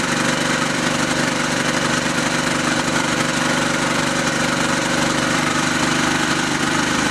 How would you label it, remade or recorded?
remade